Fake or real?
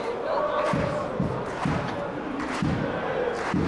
real